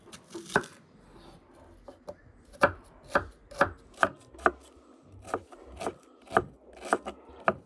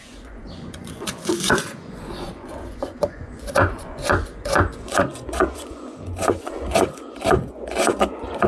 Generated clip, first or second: second